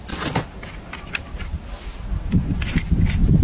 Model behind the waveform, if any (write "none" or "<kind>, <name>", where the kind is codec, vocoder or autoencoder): vocoder, BigVGAN v2